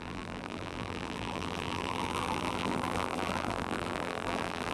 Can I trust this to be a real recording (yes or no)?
no